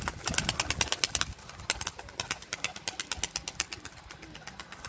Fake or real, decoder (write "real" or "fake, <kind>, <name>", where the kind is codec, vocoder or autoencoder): real